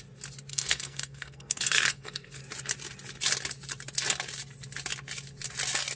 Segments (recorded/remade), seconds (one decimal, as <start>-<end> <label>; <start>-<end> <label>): 0.0-0.5 recorded; 0.5-2.4 remade; 2.4-6.0 recorded